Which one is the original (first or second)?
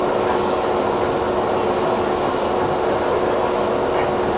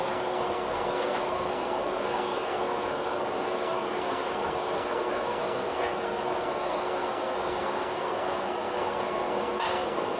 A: first